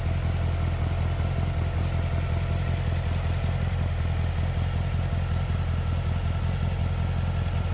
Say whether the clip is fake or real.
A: real